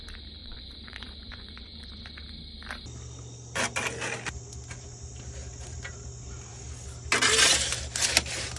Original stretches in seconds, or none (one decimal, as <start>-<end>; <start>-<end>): 0.0-0.4; 1.9-8.6